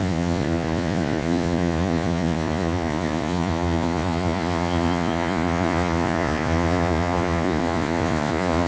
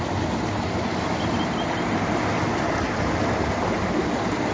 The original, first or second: second